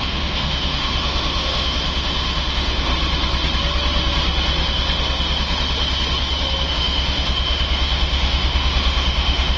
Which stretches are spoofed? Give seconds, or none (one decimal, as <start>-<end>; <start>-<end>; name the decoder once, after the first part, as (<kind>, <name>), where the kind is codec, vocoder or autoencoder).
0.0-2.9 (autoencoder, DAC-VAE); 6.7-9.6